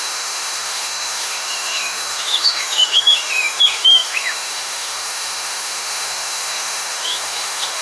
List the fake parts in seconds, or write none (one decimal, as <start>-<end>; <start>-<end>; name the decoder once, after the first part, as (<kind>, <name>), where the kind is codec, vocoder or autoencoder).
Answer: 0.0-7.8 (autoencoder, DAC-VAE)